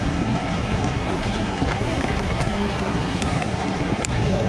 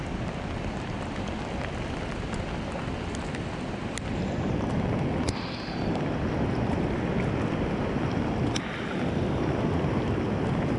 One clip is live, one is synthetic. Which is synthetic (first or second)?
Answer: first